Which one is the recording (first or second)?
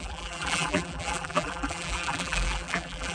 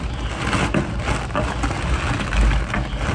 second